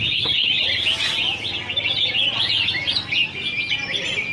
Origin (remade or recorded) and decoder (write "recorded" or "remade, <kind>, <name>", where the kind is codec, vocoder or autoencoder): recorded